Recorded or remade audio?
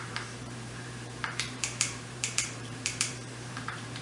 remade